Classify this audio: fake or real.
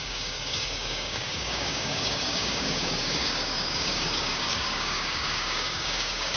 fake